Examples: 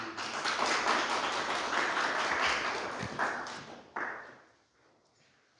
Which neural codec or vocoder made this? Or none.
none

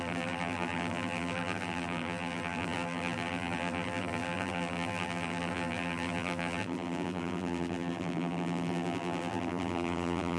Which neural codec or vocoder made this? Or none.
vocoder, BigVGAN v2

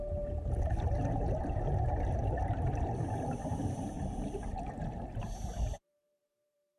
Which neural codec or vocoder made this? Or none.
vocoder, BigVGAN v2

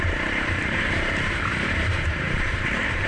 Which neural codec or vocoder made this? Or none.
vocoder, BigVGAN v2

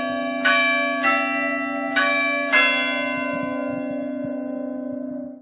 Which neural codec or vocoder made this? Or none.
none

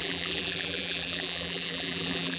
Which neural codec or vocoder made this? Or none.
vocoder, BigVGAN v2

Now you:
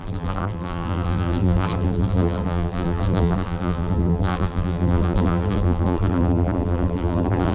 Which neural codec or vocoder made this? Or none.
vocoder, BigVGAN v2